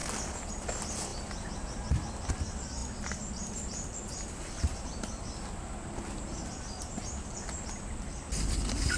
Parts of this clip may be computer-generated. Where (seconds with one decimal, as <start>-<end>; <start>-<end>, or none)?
none